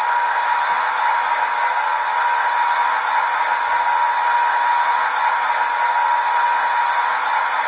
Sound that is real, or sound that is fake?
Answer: real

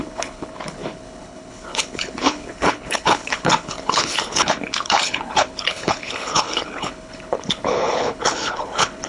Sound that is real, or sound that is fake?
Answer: fake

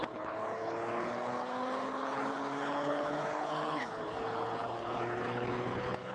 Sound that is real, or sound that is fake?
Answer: fake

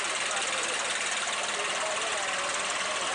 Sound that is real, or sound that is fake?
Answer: real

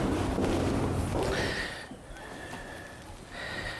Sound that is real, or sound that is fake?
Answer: real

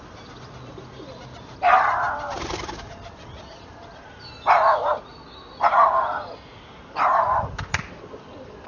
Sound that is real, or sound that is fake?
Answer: real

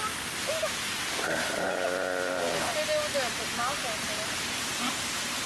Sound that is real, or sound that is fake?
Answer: real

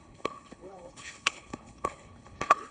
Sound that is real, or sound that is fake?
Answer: fake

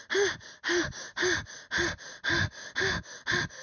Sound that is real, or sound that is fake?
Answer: real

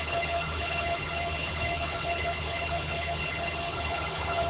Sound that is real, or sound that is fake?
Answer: fake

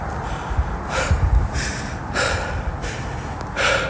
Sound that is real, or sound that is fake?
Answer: real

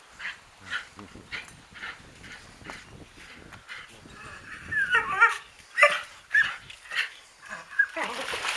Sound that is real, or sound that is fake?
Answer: real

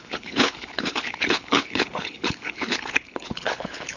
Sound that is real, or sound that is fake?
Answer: fake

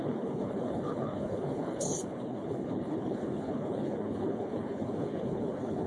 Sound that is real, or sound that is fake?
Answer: fake